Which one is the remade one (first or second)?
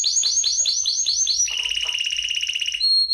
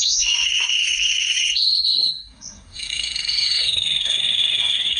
second